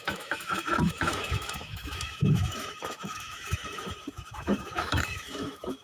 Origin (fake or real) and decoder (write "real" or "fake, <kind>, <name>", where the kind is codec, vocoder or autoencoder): fake, autoencoder, DAC-VAE